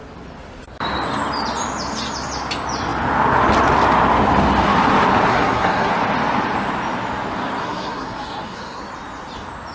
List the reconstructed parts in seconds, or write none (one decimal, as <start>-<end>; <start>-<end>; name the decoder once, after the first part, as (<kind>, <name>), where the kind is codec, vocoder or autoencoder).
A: 5.3-5.9 (codec, SNAC); 7.6-8.8